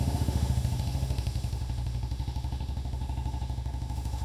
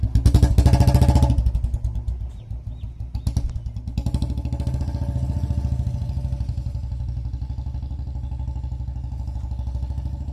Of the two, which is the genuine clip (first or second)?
second